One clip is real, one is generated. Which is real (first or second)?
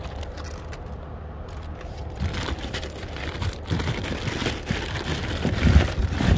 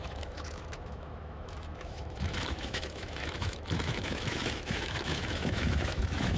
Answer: first